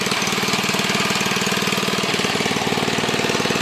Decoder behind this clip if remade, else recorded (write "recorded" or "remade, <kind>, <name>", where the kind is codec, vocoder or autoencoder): recorded